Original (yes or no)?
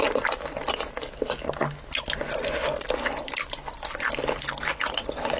yes